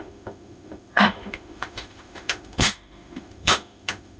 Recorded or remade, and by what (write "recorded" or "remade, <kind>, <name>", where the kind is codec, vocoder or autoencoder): remade, autoencoder, DAC-VAE